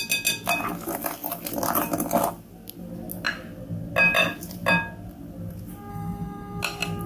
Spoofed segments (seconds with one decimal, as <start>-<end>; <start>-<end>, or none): 5.9-6.6